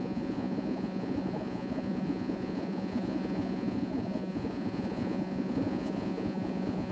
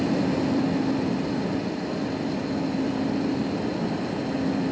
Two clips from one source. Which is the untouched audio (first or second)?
second